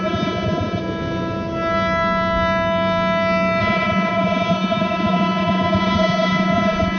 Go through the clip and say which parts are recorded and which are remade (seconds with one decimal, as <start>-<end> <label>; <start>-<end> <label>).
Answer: 0.0-0.8 remade; 0.8-3.6 recorded; 3.6-7.0 remade